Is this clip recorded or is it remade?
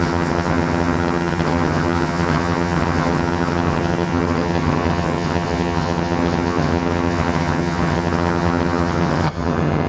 remade